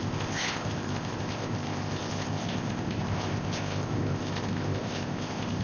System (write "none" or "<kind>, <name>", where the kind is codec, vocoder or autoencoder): codec, ZipCodec